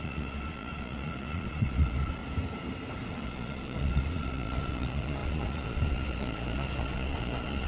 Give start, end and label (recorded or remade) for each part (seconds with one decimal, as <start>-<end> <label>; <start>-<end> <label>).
0.0-2.2 remade; 2.2-3.1 recorded; 3.1-7.7 remade